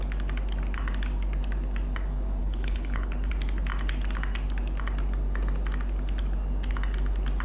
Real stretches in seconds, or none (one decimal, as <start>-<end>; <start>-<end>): 0.0-2.4; 3.3-7.4